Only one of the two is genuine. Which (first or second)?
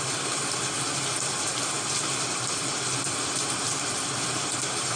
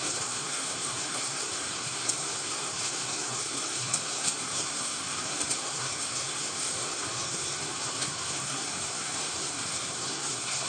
first